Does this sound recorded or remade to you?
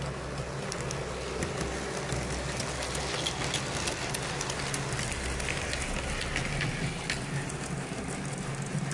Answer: recorded